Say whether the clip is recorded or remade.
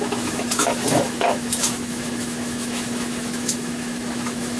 remade